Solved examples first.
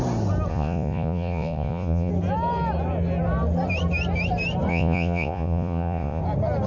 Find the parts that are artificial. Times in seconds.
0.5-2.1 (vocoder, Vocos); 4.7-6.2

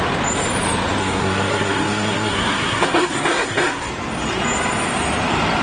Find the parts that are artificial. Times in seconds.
1.0-3.9 (codec, SNAC)

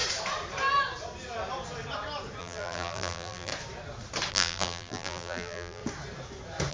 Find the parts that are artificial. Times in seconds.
2.4-3.5 (vocoder, BigVGAN v2); 4.3-5.8

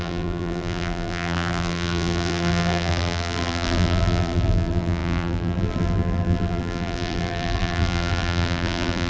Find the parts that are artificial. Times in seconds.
0.0-9.1 (vocoder, BigVGAN v2)

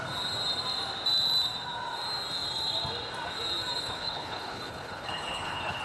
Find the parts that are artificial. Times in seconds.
3.8-5.8 (codec, HILCodec)

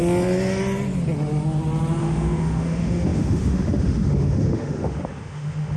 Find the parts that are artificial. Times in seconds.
2.0-5.8 (autoencoder, DAC-VAE)